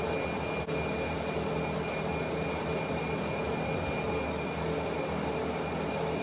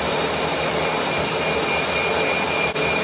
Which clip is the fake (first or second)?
second